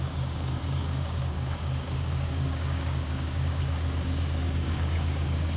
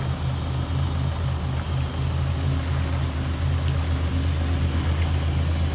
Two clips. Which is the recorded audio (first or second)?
second